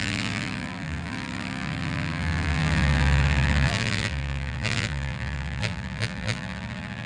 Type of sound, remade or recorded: remade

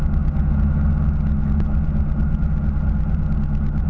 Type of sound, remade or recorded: recorded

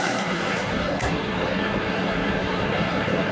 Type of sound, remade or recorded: remade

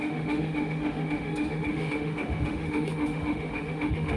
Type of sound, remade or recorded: remade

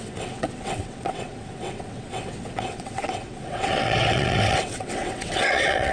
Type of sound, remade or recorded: remade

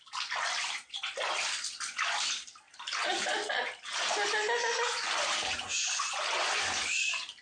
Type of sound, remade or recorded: recorded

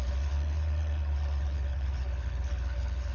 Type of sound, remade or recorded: remade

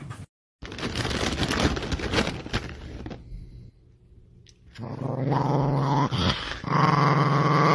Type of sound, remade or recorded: recorded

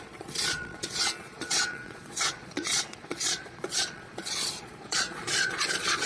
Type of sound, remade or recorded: remade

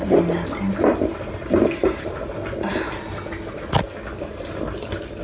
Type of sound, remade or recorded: recorded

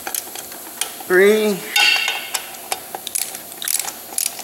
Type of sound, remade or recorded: recorded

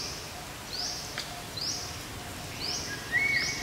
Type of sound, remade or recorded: recorded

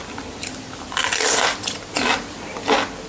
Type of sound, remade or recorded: recorded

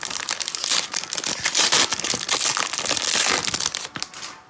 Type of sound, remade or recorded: recorded